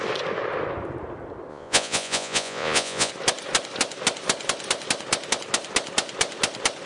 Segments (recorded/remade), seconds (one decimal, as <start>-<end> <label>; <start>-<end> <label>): 0.0-1.5 recorded; 1.5-3.1 remade; 3.1-6.9 recorded